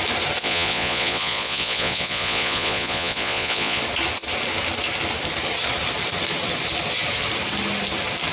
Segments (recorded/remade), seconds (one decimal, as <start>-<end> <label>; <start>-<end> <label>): 0.0-0.4 recorded; 0.4-3.8 remade; 3.8-8.3 recorded